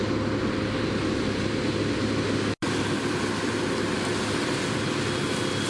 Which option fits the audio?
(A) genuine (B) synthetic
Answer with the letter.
A